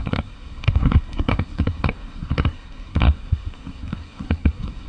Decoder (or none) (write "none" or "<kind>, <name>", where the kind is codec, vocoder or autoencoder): codec, SNAC